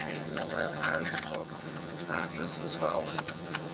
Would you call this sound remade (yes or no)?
yes